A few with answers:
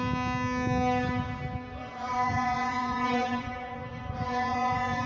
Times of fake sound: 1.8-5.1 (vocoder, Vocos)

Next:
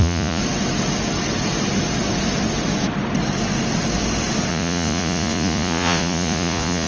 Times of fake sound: 0.0-0.4 (vocoder, Vocos); 4.5-6.9

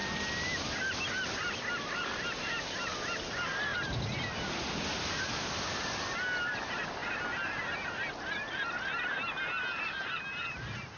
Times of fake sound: none